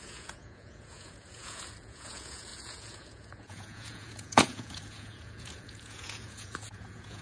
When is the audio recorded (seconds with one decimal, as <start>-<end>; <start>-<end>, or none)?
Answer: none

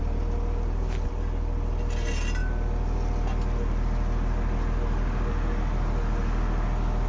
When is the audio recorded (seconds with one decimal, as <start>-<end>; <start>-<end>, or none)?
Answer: 0.0-7.1

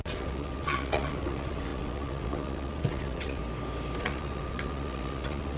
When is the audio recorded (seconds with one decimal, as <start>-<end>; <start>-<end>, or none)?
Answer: 3.4-4.0